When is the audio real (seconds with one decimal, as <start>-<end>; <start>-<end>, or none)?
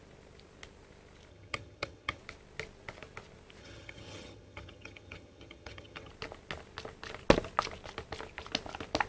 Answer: 0.0-1.3; 2.2-3.6; 6.1-9.1